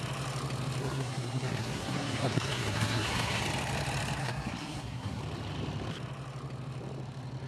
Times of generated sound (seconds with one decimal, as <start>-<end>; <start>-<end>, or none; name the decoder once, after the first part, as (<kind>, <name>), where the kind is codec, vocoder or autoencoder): 0.8-3.4 (codec, SNAC); 4.2-5.2